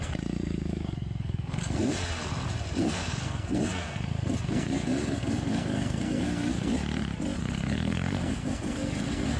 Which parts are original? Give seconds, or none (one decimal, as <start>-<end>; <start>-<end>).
2.0-2.8; 6.7-7.4